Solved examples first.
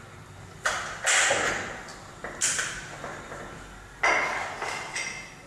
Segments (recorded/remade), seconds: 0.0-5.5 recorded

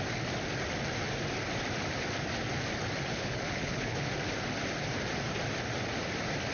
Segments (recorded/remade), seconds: 0.0-3.1 recorded; 3.1-4.1 remade; 4.1-6.5 recorded

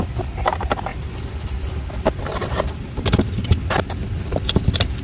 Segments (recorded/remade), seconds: 0.0-5.0 recorded

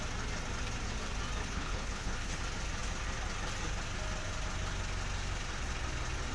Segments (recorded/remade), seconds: 0.0-1.4 recorded; 1.4-2.4 remade; 2.4-6.3 recorded

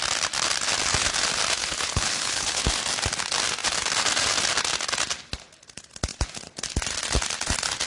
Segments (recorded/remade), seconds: 0.0-1.6 recorded; 1.6-2.6 remade; 2.6-7.9 recorded

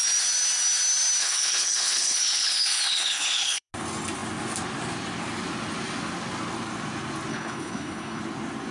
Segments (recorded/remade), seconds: 0.0-1.2 recorded; 1.2-3.7 remade; 3.7-7.3 recorded; 7.3-8.2 remade; 8.2-8.7 recorded